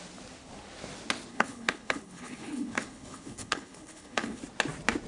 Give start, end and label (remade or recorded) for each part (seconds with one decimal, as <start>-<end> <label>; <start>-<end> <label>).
0.0-1.3 recorded; 1.3-4.4 remade; 4.4-5.1 recorded